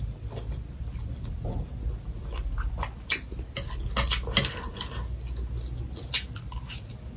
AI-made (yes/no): no